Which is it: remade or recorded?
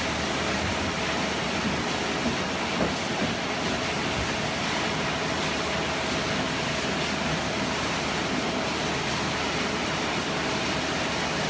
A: recorded